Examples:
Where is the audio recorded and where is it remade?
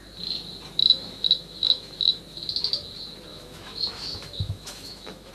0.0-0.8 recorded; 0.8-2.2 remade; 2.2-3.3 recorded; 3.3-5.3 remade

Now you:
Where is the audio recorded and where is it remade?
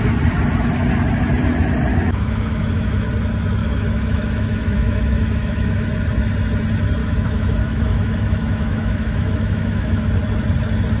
0.0-1.9 recorded; 1.9-3.1 remade; 3.1-3.6 recorded; 3.6-5.9 remade; 5.9-7.0 recorded; 7.0-10.0 remade; 10.0-11.0 recorded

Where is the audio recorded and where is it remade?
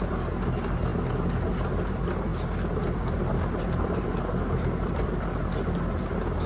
0.0-6.5 recorded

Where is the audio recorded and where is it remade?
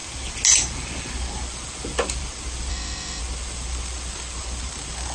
0.0-2.7 recorded; 2.7-3.2 remade; 3.2-5.1 recorded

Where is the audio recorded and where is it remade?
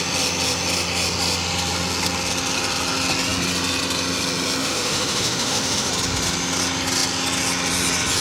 0.0-4.6 recorded; 4.6-5.9 remade; 5.9-8.2 recorded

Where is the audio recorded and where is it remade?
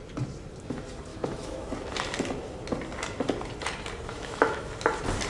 0.0-1.1 recorded; 1.1-1.7 remade; 1.7-4.1 recorded; 4.1-4.7 remade; 4.7-5.3 recorded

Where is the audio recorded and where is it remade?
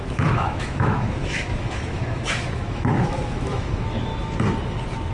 0.0-4.1 remade; 4.1-5.1 recorded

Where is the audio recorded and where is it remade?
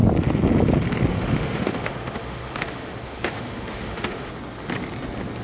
0.0-1.1 recorded; 1.1-4.3 remade; 4.3-5.4 recorded